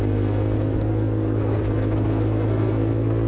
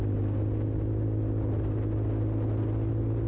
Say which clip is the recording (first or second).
second